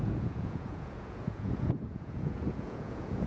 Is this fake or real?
fake